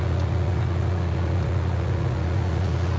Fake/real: fake